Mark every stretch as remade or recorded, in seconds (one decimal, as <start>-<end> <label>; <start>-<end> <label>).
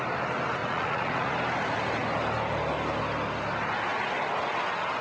0.0-0.6 recorded; 0.6-1.3 remade; 1.3-5.0 recorded